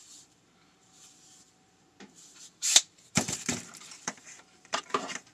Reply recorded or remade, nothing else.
remade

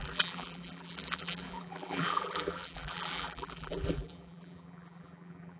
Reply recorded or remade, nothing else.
remade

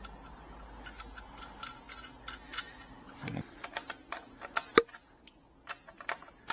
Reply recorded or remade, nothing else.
recorded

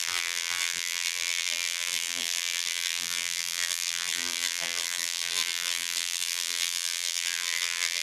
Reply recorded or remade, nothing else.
remade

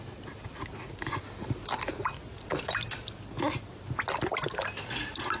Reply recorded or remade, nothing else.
recorded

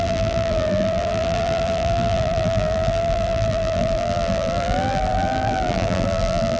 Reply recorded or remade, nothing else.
remade